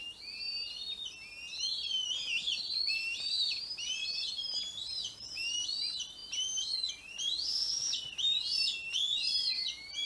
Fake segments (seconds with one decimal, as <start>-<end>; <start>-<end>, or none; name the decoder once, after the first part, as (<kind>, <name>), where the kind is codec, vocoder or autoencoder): none